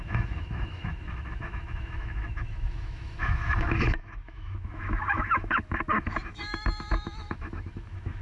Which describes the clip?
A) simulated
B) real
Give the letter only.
A